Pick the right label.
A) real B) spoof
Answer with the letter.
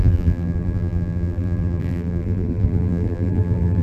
B